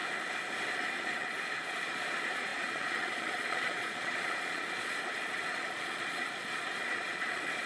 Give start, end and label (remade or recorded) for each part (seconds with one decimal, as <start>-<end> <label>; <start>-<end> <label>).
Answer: 0.0-0.7 recorded; 0.7-7.7 remade